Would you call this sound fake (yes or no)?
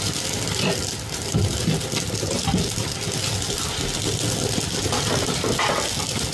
no